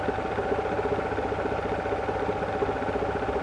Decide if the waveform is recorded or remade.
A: recorded